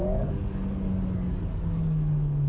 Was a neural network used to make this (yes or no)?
yes